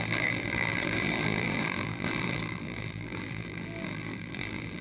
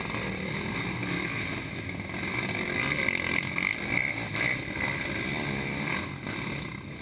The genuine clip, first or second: second